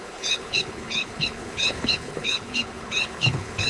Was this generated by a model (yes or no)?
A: yes